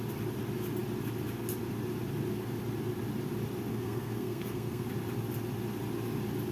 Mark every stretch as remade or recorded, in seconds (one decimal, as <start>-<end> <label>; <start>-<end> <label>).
0.0-3.7 recorded; 3.7-4.9 remade; 4.9-6.5 recorded

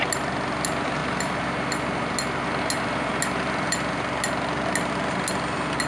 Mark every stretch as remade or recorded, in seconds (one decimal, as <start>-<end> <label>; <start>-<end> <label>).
0.0-5.9 recorded

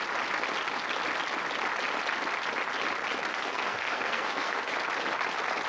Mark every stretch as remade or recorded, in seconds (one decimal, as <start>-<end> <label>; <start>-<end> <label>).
0.0-3.3 recorded; 3.3-4.7 remade; 4.7-5.7 recorded

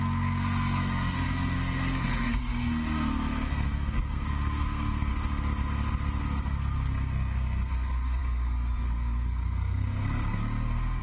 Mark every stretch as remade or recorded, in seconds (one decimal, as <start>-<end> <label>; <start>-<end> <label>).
0.0-5.1 remade; 5.1-6.2 recorded; 6.2-11.0 remade

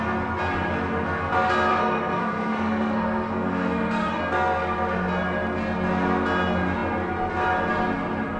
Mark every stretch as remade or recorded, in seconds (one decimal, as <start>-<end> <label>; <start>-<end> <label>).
0.0-1.7 recorded; 1.7-4.2 remade; 4.2-8.4 recorded

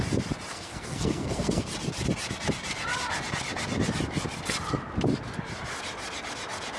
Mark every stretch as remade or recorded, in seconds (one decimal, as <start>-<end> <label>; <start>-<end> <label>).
0.0-0.5 recorded; 0.5-1.7 remade; 1.7-6.8 recorded

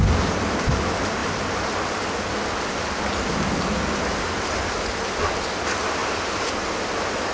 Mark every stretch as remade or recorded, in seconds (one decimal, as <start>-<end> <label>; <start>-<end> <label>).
0.0-7.3 recorded